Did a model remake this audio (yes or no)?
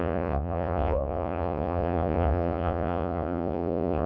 yes